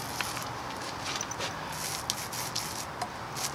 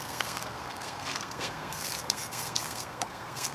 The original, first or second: first